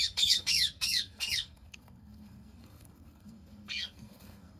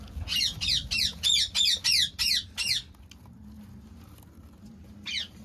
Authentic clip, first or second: second